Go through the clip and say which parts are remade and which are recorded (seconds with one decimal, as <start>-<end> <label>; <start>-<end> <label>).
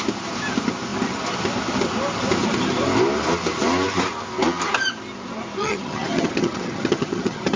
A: 0.0-5.6 recorded; 5.6-7.6 remade